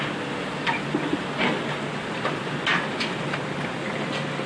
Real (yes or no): yes